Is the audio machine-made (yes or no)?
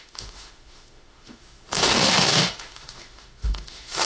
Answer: yes